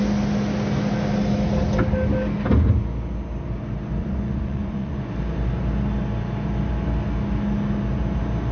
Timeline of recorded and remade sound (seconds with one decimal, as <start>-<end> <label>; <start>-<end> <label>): 0.0-4.0 recorded; 4.0-5.1 remade; 5.1-8.5 recorded